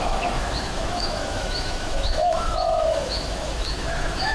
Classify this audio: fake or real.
fake